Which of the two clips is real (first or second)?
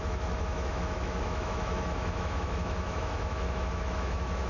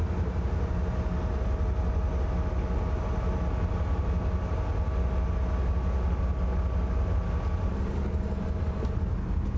second